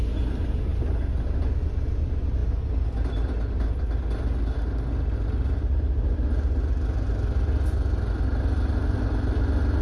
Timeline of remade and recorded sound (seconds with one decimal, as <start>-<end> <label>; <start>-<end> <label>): 0.0-9.8 recorded